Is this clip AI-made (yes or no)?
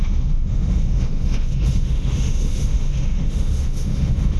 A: yes